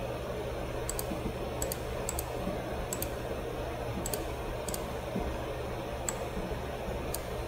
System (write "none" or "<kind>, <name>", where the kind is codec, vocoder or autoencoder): none